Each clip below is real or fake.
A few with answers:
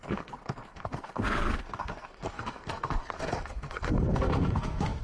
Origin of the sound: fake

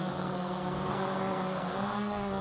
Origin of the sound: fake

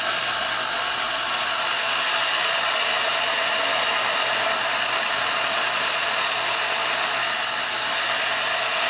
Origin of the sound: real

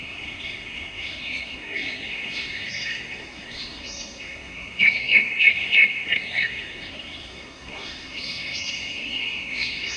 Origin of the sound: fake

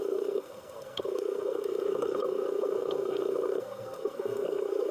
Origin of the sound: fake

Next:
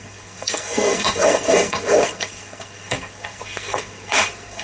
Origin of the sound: fake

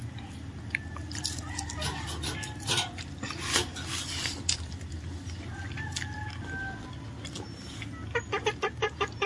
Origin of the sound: real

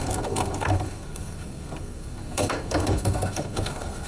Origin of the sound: fake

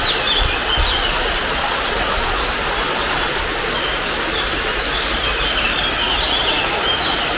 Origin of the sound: real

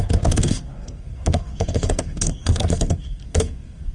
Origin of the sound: fake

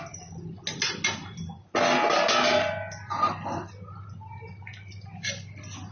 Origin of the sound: real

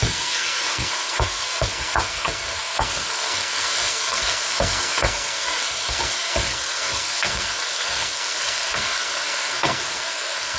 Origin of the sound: fake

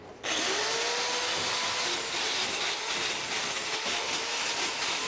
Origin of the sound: real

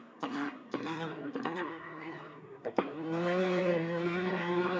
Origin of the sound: fake